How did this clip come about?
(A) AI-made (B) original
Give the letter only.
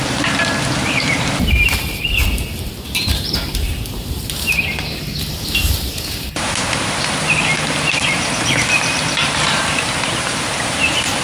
A